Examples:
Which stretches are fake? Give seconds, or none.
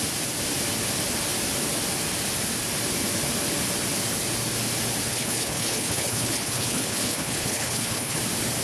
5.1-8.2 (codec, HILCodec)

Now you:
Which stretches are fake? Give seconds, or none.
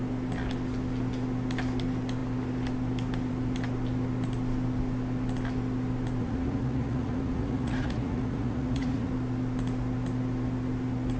6.2-9.1 (vocoder, Vocos)